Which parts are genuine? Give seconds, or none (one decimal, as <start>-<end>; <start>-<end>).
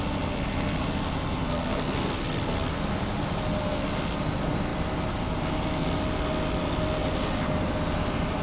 0.0-1.5; 2.7-8.4